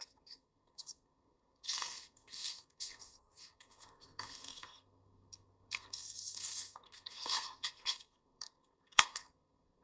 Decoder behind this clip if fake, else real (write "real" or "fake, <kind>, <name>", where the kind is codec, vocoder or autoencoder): fake, codec, SNAC